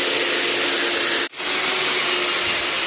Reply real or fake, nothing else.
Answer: real